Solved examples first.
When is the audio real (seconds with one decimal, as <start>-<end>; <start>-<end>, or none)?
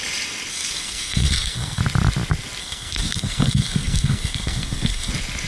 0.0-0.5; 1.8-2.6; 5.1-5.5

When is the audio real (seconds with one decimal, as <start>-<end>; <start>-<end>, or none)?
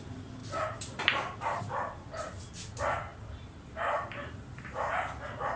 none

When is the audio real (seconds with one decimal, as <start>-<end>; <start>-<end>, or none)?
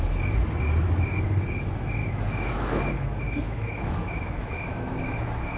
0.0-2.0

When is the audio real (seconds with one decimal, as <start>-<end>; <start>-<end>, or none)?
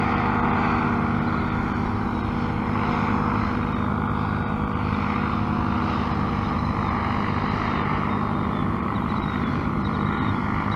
0.0-8.6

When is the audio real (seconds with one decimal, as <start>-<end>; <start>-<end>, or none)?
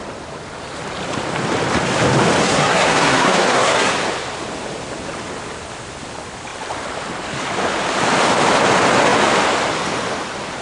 0.0-2.4; 3.9-10.6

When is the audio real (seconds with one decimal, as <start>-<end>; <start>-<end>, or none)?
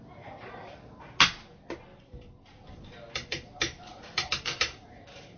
0.0-1.9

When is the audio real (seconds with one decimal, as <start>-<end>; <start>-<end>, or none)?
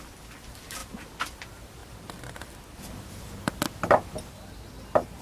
0.0-5.2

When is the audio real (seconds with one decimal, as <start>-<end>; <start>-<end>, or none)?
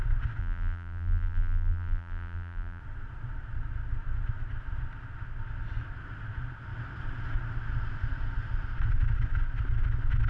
0.0-0.4; 2.8-10.3